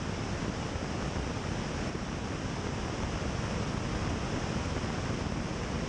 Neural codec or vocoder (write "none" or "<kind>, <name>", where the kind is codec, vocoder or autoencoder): none